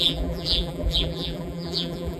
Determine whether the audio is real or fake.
fake